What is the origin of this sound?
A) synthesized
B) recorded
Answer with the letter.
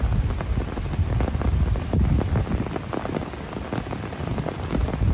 B